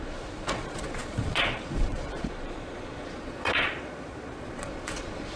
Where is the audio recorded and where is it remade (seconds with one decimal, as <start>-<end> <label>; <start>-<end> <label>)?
0.0-5.4 remade